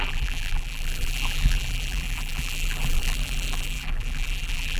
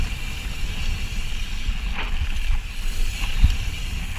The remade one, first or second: first